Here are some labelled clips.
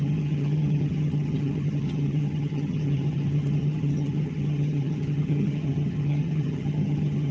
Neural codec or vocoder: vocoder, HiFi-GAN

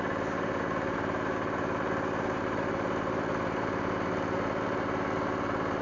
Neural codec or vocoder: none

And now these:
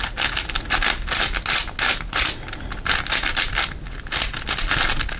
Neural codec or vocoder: none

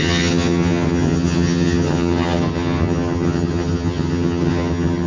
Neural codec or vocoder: vocoder, HiFi-GAN